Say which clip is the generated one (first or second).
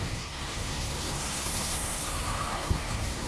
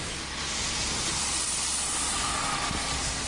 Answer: first